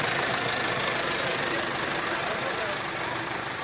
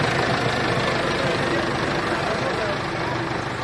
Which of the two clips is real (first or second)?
second